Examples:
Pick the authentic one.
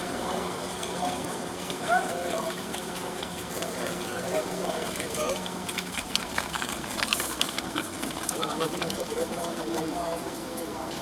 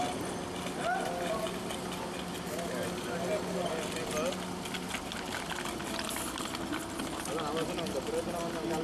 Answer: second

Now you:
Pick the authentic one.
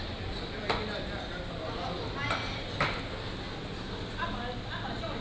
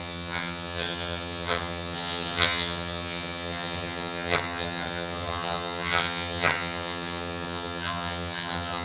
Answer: first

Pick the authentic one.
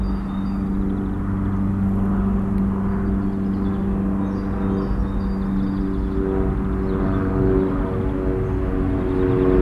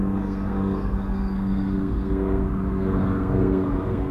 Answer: first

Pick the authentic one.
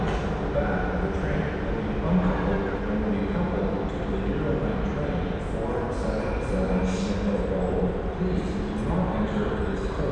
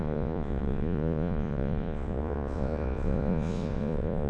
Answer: first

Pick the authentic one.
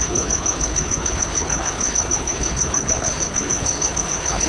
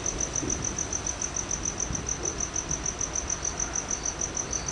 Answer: second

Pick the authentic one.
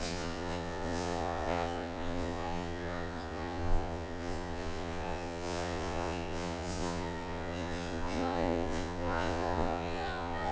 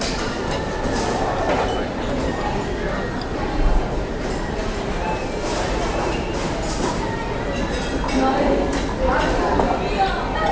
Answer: second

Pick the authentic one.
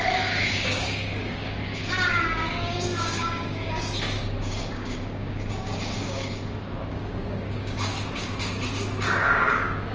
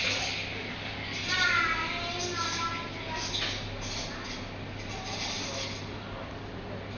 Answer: second